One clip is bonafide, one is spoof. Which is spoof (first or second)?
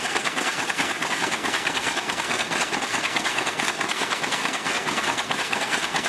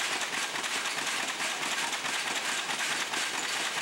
first